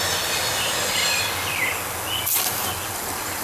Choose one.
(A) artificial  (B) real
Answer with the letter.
B